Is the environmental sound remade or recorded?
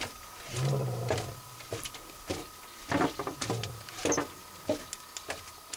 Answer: recorded